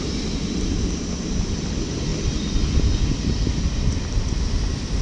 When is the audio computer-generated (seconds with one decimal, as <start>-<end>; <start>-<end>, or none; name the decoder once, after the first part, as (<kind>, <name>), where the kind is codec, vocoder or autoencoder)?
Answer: none